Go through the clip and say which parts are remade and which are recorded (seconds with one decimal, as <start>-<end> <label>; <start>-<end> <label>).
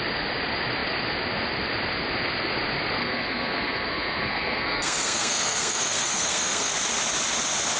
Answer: 0.0-3.0 recorded; 3.0-6.7 remade; 6.7-7.8 recorded